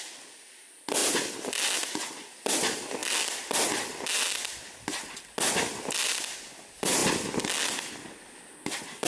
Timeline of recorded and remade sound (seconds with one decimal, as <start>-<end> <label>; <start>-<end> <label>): 0.0-1.0 recorded; 1.0-2.5 remade; 2.5-9.1 recorded